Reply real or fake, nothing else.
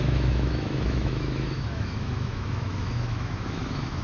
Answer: fake